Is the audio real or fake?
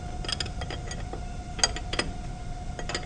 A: real